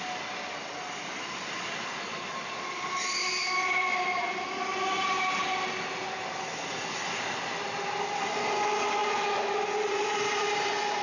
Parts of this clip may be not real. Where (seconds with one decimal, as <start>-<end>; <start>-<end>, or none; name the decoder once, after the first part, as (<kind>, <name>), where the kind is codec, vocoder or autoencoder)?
none